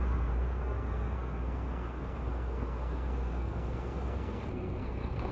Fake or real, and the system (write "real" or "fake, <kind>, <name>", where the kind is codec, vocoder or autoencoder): fake, codec, SNAC